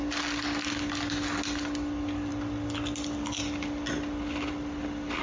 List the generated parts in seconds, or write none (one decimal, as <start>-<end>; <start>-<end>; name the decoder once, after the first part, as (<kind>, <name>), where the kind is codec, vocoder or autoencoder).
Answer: none